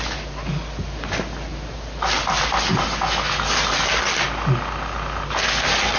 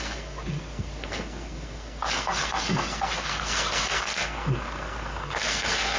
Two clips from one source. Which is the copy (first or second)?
second